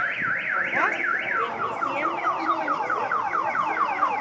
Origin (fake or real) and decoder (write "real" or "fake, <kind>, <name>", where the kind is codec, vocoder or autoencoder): real